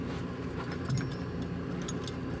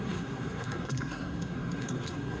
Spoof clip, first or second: second